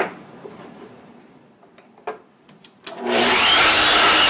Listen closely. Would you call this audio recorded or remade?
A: recorded